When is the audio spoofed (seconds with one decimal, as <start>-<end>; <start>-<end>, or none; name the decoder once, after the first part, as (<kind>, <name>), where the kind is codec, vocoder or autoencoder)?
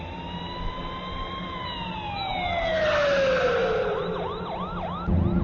none